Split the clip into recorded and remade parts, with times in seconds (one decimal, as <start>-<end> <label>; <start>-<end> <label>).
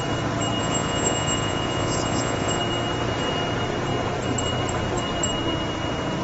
0.0-0.6 recorded; 0.6-2.6 remade; 2.6-6.2 recorded